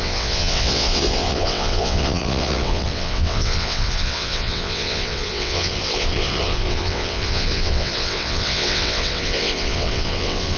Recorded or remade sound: remade